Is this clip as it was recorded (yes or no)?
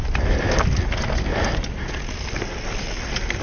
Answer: yes